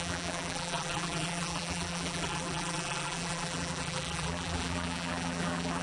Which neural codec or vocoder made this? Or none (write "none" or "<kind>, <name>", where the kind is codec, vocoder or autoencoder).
vocoder, BigVGAN v2